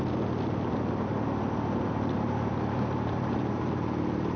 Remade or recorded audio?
recorded